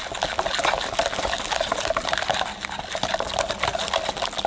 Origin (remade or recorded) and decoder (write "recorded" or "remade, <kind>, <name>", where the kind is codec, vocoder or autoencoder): recorded